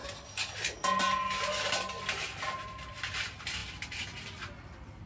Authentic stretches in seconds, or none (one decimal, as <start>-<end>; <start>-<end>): 0.0-5.1